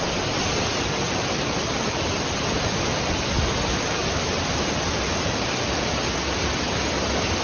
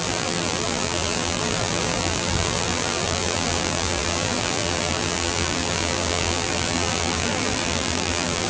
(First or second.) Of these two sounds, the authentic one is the first